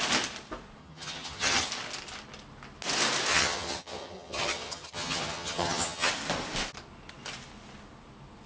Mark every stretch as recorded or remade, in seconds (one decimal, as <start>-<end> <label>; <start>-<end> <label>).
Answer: 0.0-0.8 recorded; 0.8-1.7 remade; 1.7-3.3 recorded; 3.3-6.1 remade; 6.1-8.5 recorded